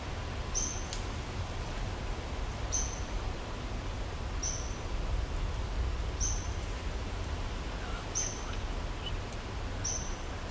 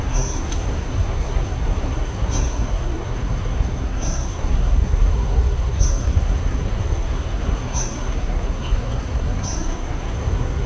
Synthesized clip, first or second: second